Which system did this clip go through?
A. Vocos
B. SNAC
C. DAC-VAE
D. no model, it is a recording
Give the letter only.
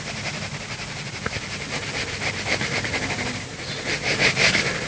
D